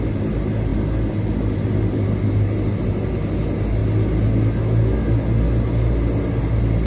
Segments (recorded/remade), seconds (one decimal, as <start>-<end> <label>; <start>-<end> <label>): 0.0-6.9 recorded